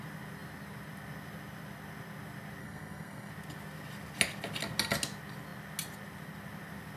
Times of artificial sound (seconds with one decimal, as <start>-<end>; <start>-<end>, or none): 2.6-3.3